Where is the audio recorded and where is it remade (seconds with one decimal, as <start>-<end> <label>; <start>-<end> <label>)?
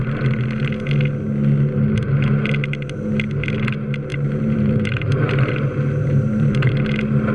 0.0-4.1 recorded; 4.1-5.5 remade; 5.5-6.0 recorded; 6.0-6.7 remade; 6.7-7.3 recorded